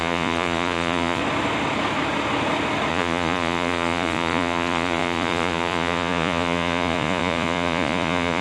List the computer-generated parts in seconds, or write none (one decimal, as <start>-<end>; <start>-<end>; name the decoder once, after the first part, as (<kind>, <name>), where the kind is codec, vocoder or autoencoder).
0.0-1.2 (vocoder, Vocos); 2.9-8.4